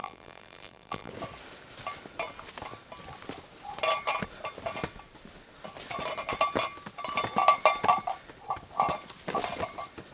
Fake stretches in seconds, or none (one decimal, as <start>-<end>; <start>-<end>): 0.0-1.1